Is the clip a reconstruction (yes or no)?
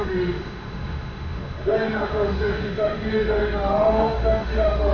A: yes